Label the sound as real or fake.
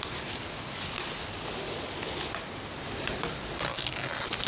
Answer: real